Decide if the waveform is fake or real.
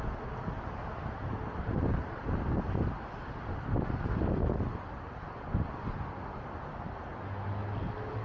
real